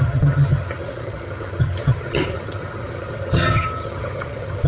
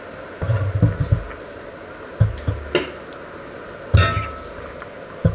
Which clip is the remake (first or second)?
first